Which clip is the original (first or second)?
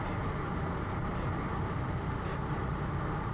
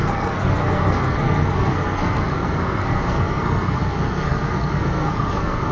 first